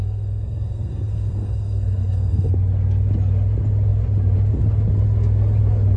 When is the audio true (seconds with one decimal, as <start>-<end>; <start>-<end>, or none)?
2.5-6.0